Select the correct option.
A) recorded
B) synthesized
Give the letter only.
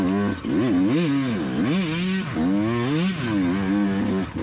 A